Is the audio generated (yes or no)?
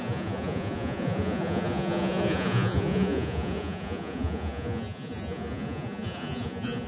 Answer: yes